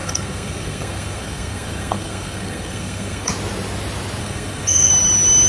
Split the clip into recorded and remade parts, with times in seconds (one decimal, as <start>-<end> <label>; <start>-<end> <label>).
0.0-3.3 remade; 3.3-4.2 recorded; 4.2-4.9 remade; 4.9-5.5 recorded